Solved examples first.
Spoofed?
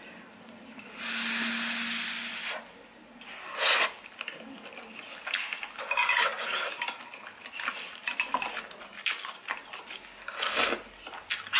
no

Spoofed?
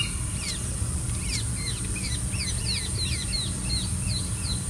no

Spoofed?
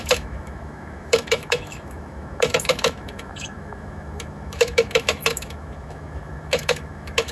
yes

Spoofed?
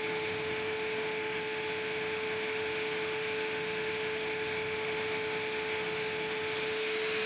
yes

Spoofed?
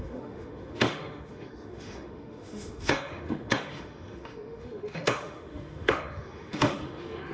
yes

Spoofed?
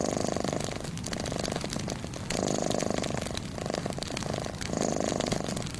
no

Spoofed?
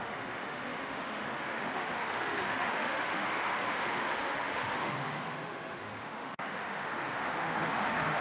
yes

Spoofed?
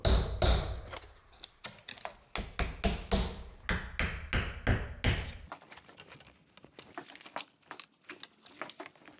no